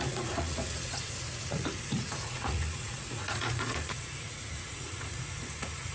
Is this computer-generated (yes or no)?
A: yes